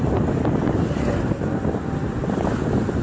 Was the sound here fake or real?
real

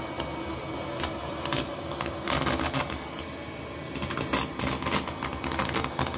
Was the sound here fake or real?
real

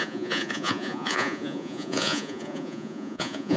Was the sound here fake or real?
fake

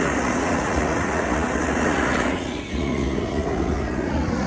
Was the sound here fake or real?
fake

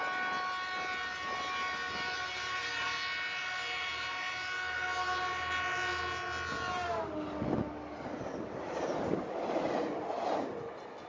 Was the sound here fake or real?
real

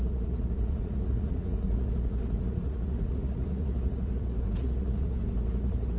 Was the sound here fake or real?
fake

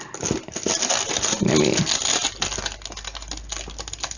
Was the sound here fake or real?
real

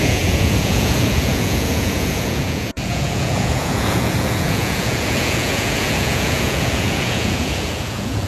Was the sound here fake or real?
fake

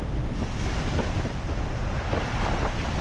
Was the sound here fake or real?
real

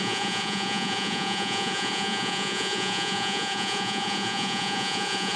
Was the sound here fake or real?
fake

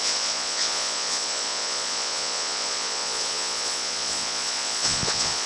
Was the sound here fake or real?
fake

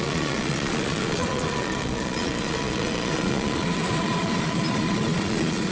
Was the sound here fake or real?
fake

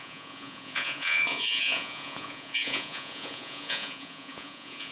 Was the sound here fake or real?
fake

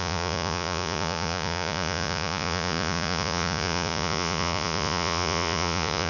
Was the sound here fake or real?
fake